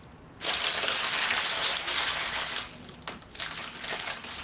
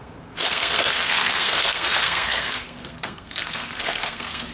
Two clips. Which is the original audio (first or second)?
first